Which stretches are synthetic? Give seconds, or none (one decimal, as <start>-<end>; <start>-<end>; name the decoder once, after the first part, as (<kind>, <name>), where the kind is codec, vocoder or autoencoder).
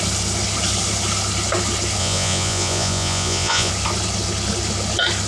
2.0-3.7 (vocoder, Vocos)